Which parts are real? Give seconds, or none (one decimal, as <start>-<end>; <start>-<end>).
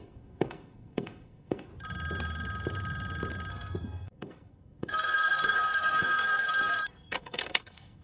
1.7-3.5